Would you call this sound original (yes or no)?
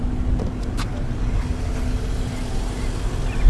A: yes